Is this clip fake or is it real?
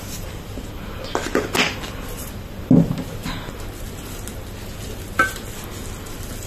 real